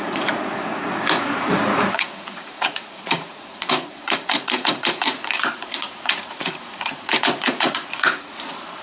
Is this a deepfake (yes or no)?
yes